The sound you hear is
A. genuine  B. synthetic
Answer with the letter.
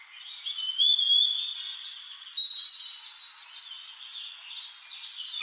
A